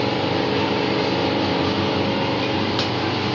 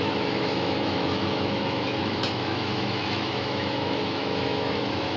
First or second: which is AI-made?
second